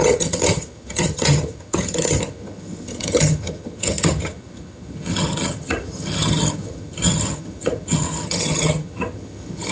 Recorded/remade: remade